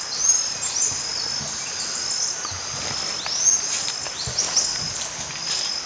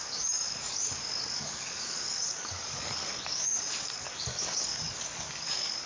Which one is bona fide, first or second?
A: first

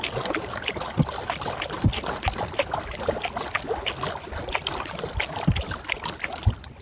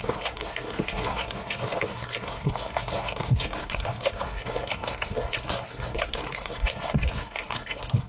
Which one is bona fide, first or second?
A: first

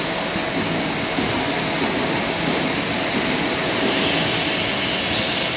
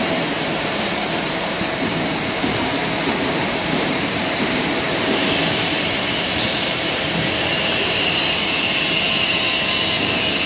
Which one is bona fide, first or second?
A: first